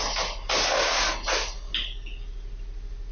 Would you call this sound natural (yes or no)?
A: yes